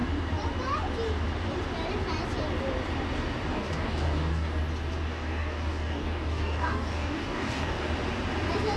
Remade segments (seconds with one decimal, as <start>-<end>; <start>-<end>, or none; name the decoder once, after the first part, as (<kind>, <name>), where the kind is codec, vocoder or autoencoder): 3.5-4.5 (codec, DAC); 5.1-7.9